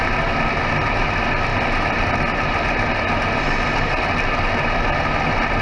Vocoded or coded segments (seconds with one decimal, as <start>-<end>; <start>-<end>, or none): none